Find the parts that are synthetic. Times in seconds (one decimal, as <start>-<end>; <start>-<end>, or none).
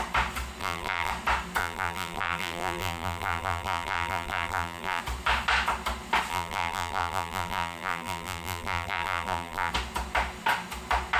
0.6-1.1; 1.6-5.0; 6.3-9.7